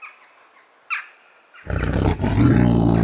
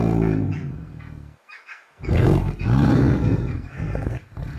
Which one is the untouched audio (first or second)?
first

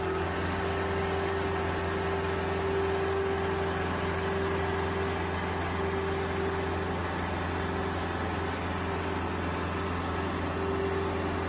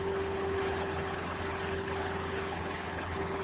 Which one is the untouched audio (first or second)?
first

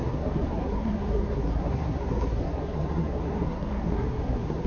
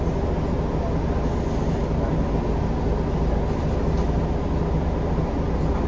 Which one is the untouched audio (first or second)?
second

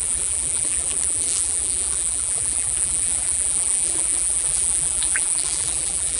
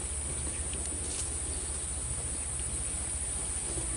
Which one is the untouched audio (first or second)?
second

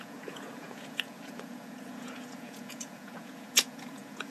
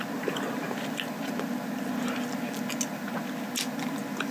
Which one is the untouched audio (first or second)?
second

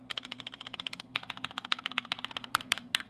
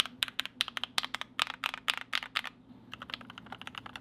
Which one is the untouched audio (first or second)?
second